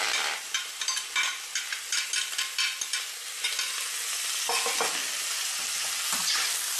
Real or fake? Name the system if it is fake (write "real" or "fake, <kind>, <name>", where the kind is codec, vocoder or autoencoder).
real